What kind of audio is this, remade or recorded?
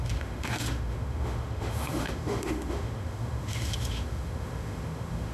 remade